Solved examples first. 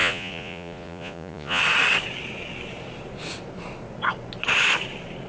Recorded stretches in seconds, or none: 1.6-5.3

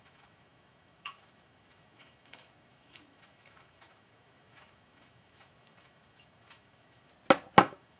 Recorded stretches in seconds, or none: 7.1-7.6

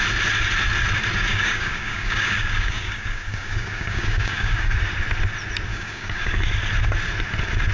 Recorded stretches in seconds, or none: 0.0-1.3; 4.7-5.7; 6.4-7.7

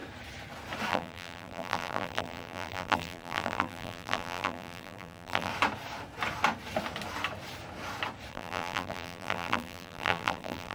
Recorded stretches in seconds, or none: 0.0-0.9; 5.5-8.3